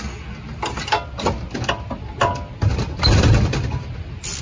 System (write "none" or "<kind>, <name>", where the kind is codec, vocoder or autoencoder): none